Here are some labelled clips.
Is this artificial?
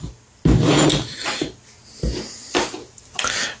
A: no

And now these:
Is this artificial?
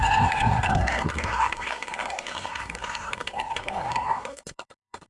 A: yes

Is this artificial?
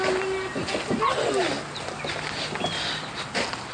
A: no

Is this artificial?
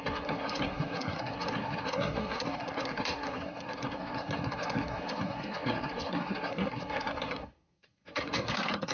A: yes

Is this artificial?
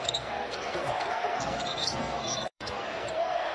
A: yes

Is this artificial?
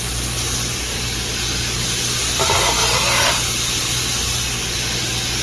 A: no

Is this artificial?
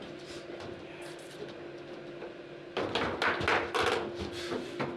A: no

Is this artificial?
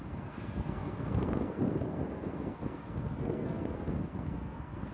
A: yes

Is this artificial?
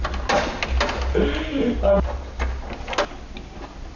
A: no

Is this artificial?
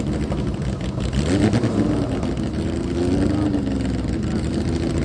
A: no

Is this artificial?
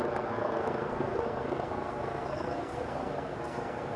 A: yes